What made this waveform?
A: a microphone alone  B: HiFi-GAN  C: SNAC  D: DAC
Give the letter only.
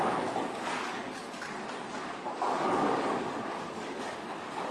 D